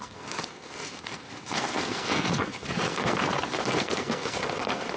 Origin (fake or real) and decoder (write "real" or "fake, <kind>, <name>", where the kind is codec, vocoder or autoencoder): fake, codec, SNAC